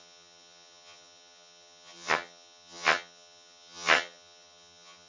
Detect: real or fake fake